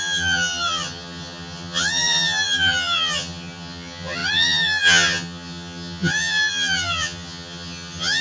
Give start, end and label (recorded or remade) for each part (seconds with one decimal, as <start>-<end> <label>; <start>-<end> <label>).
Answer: 0.0-8.2 remade